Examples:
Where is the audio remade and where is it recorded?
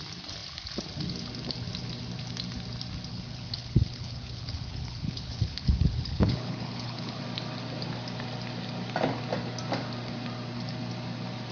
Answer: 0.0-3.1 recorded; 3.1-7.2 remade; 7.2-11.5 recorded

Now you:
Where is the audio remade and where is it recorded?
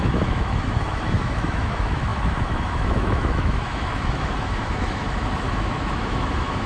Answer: 0.0-6.7 remade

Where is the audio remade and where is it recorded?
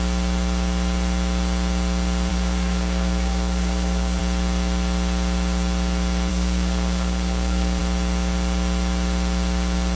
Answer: 0.0-2.3 recorded; 2.3-4.2 remade; 4.2-6.3 recorded; 6.3-7.8 remade; 7.8-9.9 recorded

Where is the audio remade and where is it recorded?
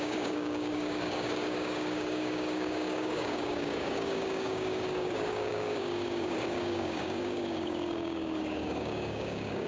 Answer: 0.0-9.7 remade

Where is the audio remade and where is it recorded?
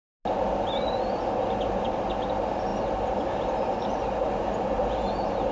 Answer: 0.0-5.5 recorded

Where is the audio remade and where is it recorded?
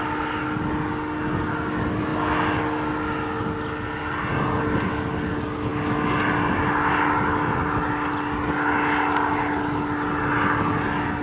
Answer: 0.0-11.2 recorded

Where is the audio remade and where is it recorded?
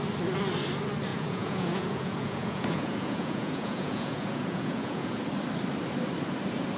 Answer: 0.0-1.1 recorded; 1.1-5.2 remade; 5.2-6.8 recorded